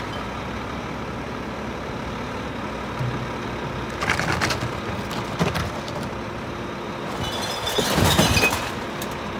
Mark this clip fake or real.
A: real